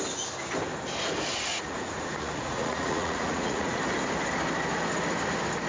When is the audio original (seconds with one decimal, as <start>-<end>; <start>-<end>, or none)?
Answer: 0.0-1.5; 3.8-5.7